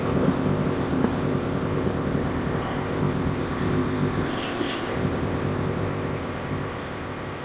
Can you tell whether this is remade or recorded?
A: remade